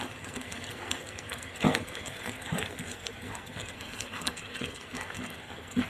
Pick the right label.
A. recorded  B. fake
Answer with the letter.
B